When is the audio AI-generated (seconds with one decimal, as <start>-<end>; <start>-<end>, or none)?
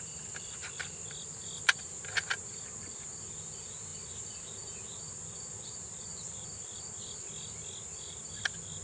none